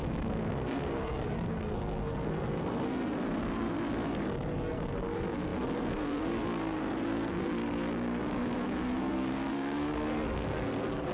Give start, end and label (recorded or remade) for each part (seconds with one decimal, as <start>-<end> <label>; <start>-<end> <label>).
0.0-11.1 remade